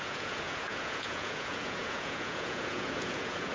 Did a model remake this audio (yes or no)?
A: yes